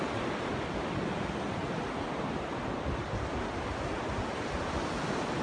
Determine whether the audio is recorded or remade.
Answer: recorded